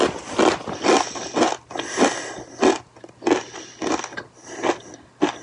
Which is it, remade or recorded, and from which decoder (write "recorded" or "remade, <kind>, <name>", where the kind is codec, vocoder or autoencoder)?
recorded